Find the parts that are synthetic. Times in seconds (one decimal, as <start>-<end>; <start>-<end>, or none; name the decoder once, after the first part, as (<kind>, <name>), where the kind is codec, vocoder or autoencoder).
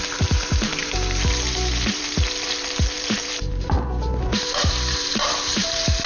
0.0-6.1 (vocoder, BigVGAN v2)